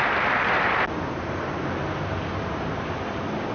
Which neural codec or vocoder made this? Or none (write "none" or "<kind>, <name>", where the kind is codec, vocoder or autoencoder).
none